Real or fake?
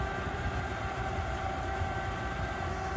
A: real